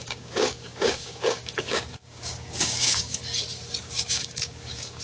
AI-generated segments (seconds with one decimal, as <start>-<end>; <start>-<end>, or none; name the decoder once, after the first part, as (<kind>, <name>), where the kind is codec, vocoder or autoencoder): 0.0-3.2 (codec, DAC); 3.8-5.0